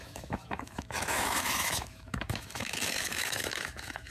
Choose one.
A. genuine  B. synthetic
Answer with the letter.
B